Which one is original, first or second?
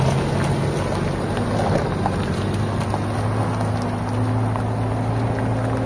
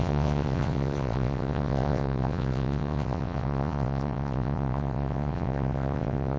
first